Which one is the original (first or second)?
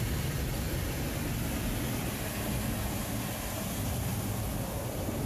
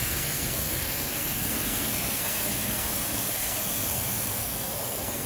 first